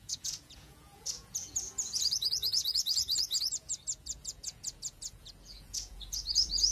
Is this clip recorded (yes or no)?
no